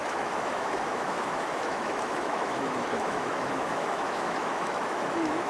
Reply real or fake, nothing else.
fake